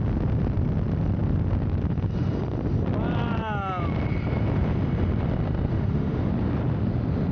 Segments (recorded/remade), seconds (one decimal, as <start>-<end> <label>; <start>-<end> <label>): 0.0-5.7 recorded; 5.7-6.3 remade; 6.3-7.3 recorded